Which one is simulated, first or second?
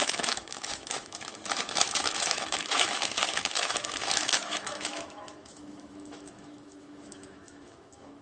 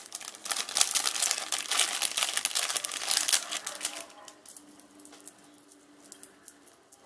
first